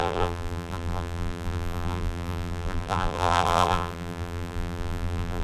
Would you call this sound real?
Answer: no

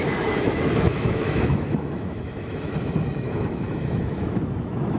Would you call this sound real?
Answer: no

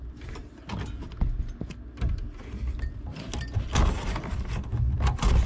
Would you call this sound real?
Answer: yes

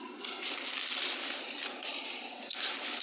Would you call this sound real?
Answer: yes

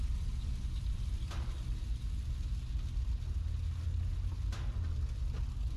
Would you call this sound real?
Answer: yes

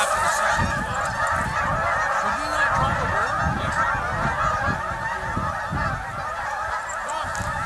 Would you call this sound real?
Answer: yes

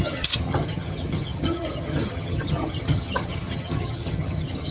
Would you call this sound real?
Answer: no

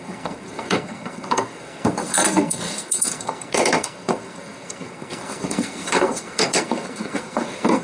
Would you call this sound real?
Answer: no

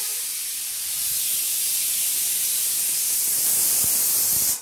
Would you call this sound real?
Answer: yes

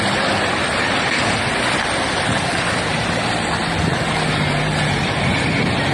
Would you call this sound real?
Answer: yes